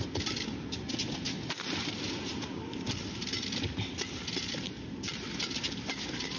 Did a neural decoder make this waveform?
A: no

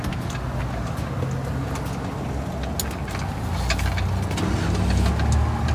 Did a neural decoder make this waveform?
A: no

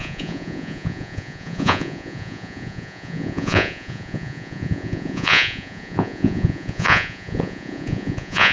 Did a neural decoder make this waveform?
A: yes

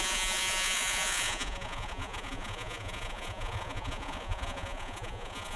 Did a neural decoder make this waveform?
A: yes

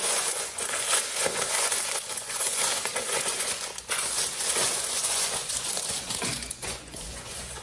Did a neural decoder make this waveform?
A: yes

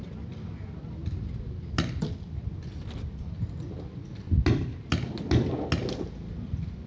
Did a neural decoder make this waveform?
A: no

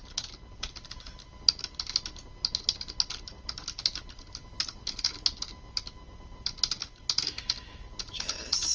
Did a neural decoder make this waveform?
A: no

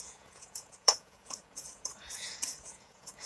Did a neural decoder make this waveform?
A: yes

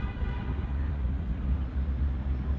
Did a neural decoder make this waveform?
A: yes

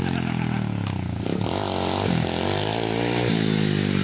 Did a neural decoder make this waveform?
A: no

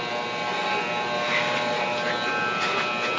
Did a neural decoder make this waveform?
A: no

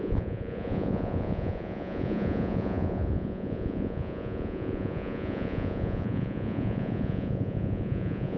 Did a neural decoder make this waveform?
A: yes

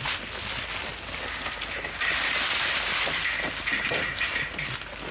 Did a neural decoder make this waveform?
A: no